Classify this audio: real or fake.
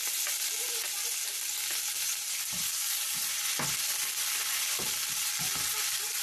real